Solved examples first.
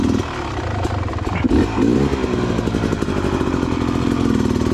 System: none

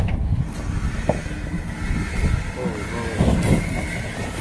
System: none